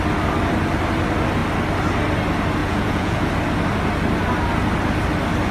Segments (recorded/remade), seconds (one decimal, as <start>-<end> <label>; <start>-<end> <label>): 0.0-2.6 recorded; 2.6-3.3 remade; 3.3-5.5 recorded